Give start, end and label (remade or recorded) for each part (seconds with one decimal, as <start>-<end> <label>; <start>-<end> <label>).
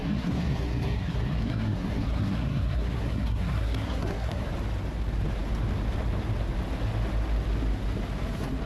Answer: 0.0-4.5 remade; 4.5-8.7 recorded